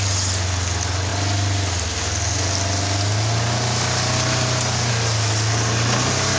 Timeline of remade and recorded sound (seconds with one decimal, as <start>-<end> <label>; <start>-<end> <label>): 0.0-6.4 recorded